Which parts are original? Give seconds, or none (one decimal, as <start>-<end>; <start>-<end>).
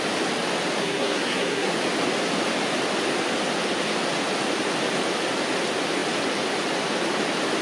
0.0-0.8; 1.7-7.6